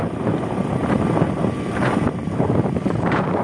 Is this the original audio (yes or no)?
no